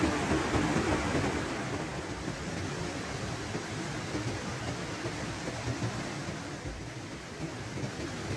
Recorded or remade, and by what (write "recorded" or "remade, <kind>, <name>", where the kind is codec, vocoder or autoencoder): remade, vocoder, BigVGAN v2